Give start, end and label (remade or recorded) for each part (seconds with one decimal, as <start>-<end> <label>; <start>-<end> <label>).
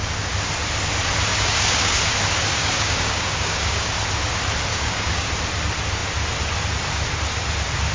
0.0-1.3 recorded; 1.3-2.0 remade; 2.0-2.5 recorded; 2.5-3.9 remade; 3.9-4.7 recorded; 4.7-5.3 remade; 5.3-7.9 recorded